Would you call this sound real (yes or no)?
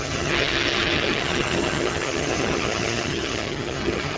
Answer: no